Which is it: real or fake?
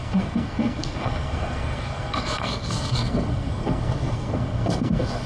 fake